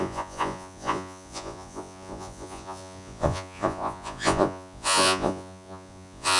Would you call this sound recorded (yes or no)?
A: no